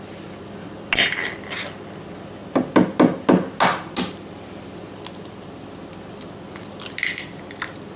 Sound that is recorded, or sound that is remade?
recorded